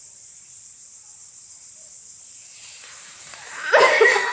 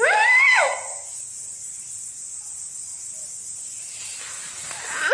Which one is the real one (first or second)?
second